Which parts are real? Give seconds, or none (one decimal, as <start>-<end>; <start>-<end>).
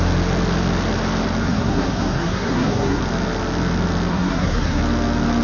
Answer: 0.0-1.4; 3.0-4.1; 4.8-5.4